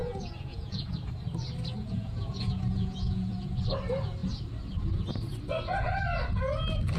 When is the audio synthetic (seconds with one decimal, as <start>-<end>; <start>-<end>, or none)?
0.0-0.9; 1.8-3.6